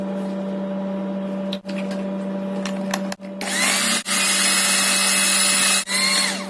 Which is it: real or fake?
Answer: real